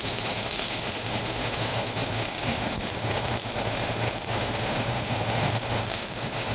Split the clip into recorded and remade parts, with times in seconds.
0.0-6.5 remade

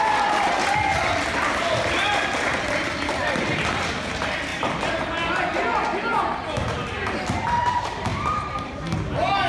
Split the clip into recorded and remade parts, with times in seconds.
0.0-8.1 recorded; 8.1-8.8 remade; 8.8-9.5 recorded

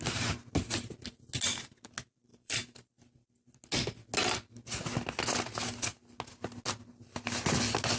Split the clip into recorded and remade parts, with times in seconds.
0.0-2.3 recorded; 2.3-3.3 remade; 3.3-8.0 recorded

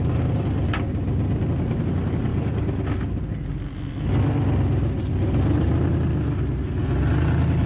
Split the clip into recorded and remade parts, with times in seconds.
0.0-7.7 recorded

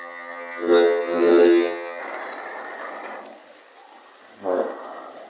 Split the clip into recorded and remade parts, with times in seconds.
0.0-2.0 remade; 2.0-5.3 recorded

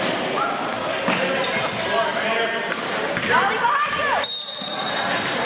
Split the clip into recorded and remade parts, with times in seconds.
0.0-5.5 recorded

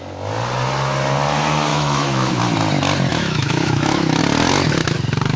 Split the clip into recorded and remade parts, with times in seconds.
0.0-1.7 recorded; 1.7-2.4 remade; 2.4-3.1 recorded; 3.1-4.2 remade; 4.2-5.4 recorded